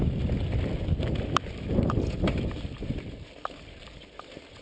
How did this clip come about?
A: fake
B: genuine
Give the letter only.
B